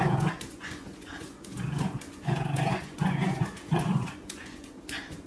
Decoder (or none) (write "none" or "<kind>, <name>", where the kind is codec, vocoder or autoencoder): vocoder, Vocos